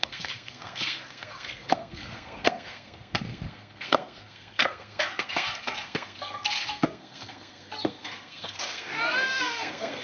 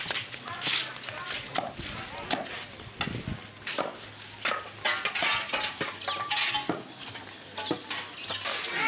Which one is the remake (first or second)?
first